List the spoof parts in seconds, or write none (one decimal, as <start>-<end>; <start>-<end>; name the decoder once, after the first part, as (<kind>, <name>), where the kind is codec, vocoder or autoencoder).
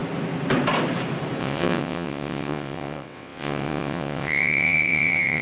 1.4-5.4 (vocoder, WaveNeXt)